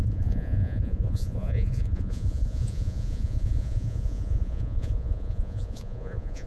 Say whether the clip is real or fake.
fake